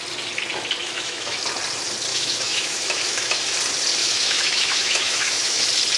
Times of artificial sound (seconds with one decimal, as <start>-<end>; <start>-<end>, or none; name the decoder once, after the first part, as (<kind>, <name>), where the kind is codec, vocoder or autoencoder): 0.8-1.4 (autoencoder, DAC-VAE); 2.1-3.4; 4.0-5.6